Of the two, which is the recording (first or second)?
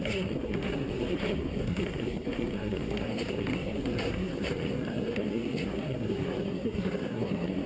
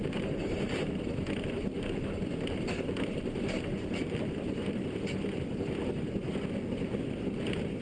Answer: second